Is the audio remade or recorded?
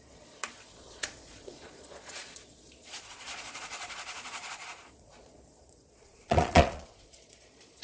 remade